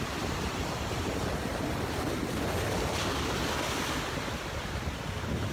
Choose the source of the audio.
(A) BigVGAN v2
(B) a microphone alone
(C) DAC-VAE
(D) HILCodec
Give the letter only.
B